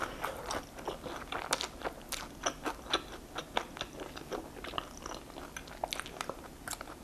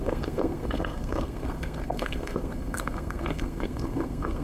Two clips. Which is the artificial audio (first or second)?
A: second